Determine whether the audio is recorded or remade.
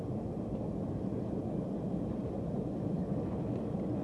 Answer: recorded